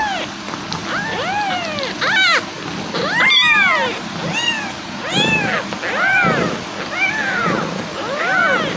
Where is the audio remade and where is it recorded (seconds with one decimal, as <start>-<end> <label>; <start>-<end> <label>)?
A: 0.0-8.8 recorded